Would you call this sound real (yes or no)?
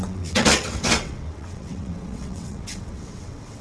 no